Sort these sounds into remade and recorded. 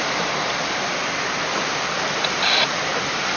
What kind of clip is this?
remade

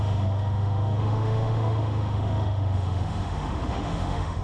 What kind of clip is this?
remade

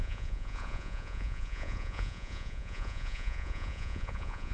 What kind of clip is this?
remade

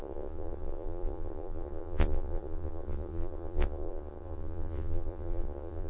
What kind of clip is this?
remade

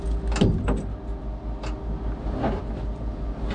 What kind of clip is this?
recorded